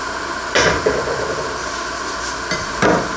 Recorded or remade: recorded